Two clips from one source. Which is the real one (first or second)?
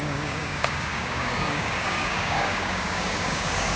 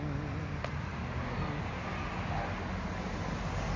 second